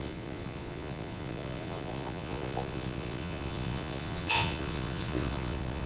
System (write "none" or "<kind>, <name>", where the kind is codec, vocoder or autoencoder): vocoder, Vocos